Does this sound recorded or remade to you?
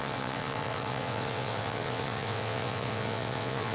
remade